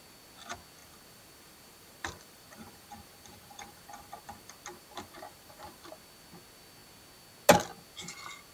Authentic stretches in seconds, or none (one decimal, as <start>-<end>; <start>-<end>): 0.0-0.8; 5.9-8.5